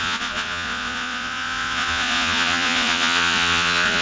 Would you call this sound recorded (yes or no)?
no